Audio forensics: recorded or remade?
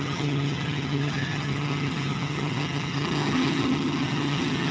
remade